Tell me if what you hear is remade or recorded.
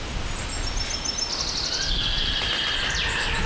recorded